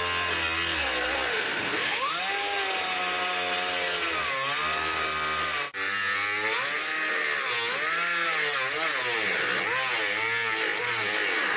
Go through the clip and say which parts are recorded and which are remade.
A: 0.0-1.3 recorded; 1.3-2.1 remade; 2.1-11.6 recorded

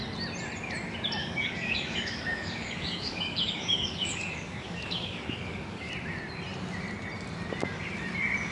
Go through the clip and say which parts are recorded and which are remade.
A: 0.0-1.2 recorded; 1.2-5.9 remade; 5.9-8.5 recorded